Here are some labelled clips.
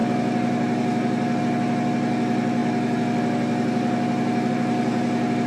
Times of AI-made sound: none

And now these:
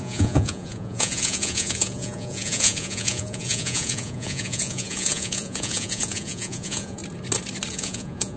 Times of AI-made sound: 0.0-7.0 (vocoder, Vocos); 7.7-8.4

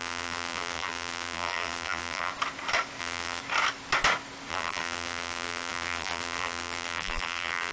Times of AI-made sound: 0.0-2.3 (vocoder, BigVGAN v2); 3.0-3.4; 4.5-7.7

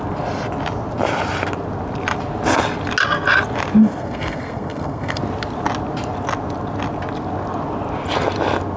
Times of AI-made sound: 3.8-5.2 (codec, SNAC)

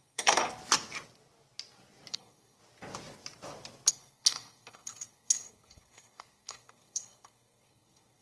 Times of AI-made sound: 0.0-0.4 (codec, SNAC); 2.1-2.6; 3.9-8.2

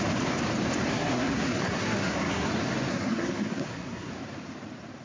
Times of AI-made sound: 0.9-2.5 (codec, SNAC); 2.9-4.1

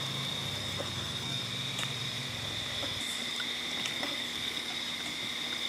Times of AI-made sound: 0.6-1.4 (codec, SNAC); 3.9-4.7